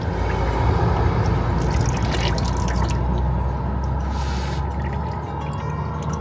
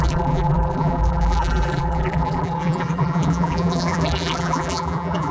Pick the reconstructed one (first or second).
second